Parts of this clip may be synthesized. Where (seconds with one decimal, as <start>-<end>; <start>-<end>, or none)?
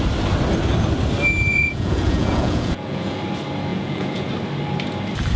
1.5-3.2; 3.7-4.3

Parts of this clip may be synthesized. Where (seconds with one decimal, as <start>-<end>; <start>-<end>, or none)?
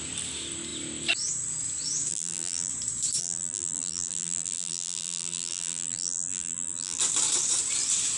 2.1-2.7; 3.2-7.0